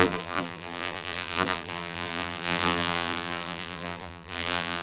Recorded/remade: remade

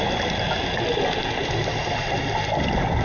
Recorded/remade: recorded